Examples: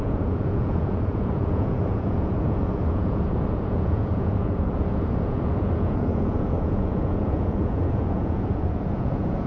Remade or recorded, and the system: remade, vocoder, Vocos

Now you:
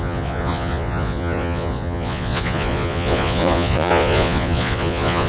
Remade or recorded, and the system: remade, vocoder, Vocos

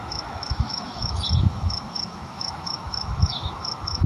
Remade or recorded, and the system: remade, autoencoder, DAC-VAE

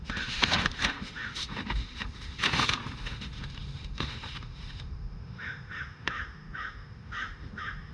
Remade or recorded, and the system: remade, autoencoder, DAC-VAE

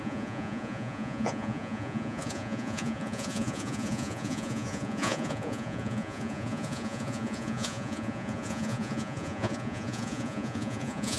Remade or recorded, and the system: remade, vocoder, Vocos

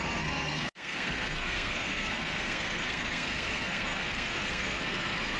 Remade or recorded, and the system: remade, codec, SNAC